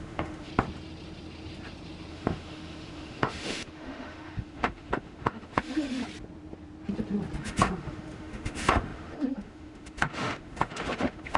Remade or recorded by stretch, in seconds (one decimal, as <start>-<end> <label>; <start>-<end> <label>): 0.0-0.5 remade; 0.5-2.1 recorded; 2.1-6.0 remade; 6.0-7.4 recorded; 7.4-11.4 remade